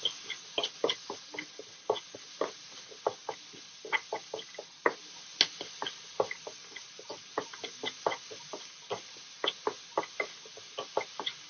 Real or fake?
real